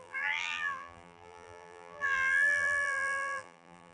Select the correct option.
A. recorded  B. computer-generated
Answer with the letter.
B